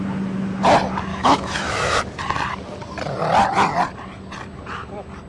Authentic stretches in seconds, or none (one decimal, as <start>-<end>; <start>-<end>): 0.0-1.1; 2.0-5.3